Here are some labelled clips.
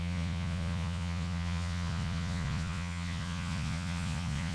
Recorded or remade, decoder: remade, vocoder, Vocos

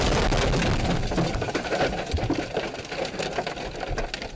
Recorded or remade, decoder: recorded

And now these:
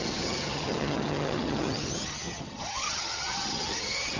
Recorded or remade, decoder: remade, vocoder, HiFi-GAN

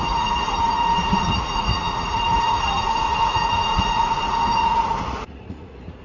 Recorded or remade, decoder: remade, vocoder, Vocos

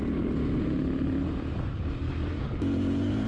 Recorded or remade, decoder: recorded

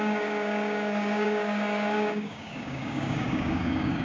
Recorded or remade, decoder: remade, codec, DAC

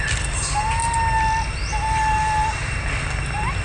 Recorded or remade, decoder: recorded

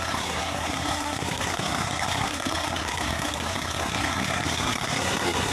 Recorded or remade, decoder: remade, codec, SNAC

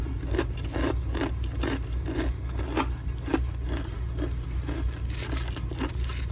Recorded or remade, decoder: recorded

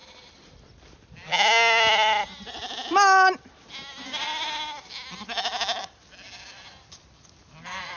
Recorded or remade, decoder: recorded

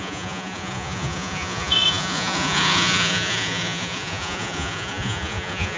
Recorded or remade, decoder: remade, vocoder, Vocos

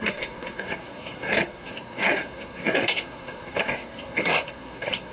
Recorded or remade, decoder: remade, codec, SNAC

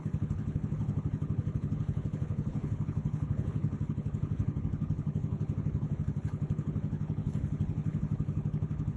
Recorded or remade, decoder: remade, codec, HILCodec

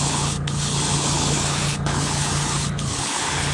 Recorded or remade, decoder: remade, codec, HILCodec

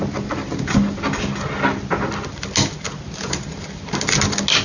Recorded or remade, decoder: recorded